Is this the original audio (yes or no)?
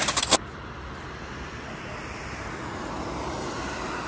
yes